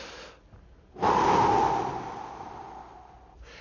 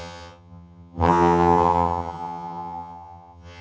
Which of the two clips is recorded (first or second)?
first